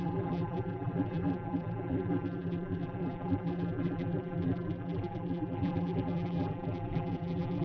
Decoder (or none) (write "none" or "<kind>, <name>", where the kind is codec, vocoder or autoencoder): vocoder, BigVGAN v2